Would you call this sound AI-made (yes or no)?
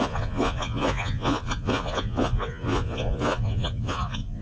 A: yes